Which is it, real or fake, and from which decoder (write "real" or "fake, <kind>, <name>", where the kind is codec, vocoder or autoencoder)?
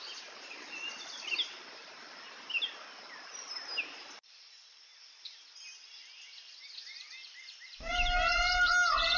real